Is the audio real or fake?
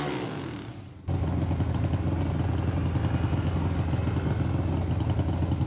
real